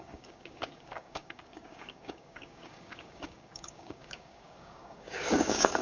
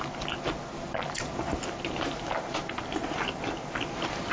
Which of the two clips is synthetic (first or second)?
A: first